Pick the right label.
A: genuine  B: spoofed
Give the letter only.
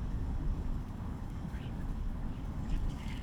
B